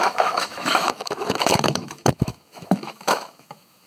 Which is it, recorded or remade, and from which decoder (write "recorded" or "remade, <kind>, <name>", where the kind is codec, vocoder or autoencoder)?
remade, autoencoder, DAC-VAE